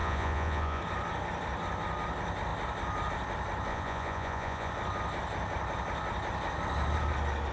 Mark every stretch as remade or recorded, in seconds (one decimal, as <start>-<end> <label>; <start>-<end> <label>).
0.0-0.8 remade; 0.8-3.7 recorded; 3.7-4.7 remade; 4.7-7.5 recorded